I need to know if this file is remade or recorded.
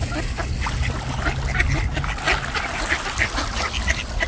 recorded